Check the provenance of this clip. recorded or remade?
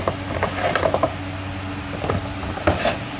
recorded